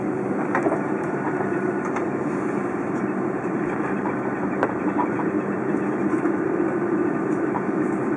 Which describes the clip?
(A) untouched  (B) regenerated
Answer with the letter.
B